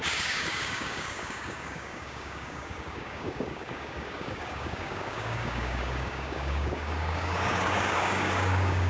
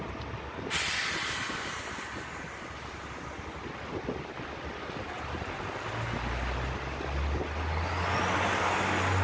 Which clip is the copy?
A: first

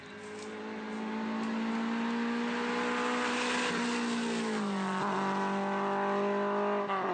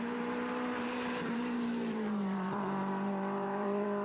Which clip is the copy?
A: second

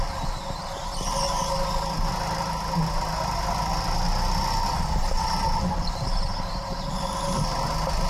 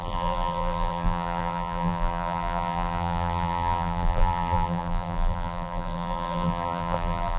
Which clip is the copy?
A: second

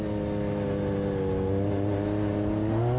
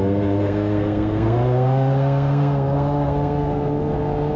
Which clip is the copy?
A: second